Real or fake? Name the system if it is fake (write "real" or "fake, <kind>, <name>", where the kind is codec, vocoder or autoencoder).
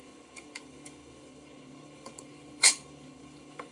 fake, codec, HILCodec